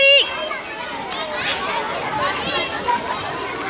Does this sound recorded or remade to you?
recorded